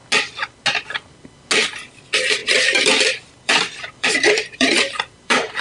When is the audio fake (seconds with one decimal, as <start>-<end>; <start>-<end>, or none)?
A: 2.4-5.6